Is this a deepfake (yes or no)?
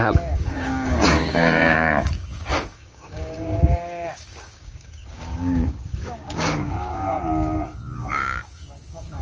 yes